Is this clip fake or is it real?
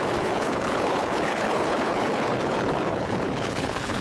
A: fake